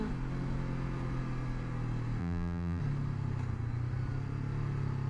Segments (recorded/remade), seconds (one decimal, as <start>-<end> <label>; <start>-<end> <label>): 0.0-2.2 recorded; 2.2-2.8 remade; 2.8-5.1 recorded